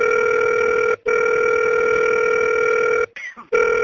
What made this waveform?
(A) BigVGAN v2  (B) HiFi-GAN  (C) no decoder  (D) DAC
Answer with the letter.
C